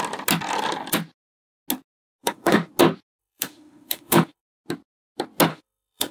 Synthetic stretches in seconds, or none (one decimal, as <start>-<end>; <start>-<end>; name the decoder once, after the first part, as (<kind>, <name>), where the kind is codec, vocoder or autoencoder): 2.2-2.7 (autoencoder, DAC-VAE); 3.2-4.4; 5.5-6.1